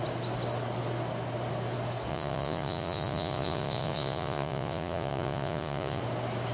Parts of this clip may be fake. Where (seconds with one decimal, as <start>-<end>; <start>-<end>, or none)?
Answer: 2.1-6.0